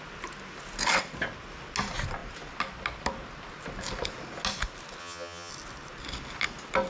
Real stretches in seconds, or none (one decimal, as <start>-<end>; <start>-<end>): 0.0-5.0; 5.5-6.9